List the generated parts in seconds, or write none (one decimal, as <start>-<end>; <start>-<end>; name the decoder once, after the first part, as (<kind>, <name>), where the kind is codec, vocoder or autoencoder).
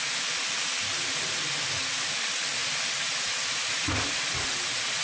none